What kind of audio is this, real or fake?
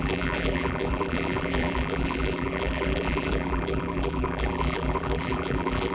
fake